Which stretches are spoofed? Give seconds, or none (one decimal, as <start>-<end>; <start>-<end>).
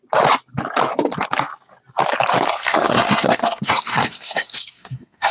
2.5-5.3